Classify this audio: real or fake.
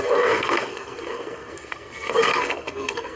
fake